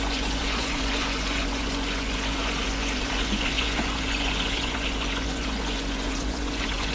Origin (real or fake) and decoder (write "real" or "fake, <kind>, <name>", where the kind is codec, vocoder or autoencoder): fake, vocoder, Vocos